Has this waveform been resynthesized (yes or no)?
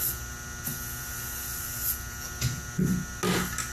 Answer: no